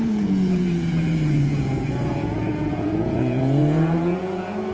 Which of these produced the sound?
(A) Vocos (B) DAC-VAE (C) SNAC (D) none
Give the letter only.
A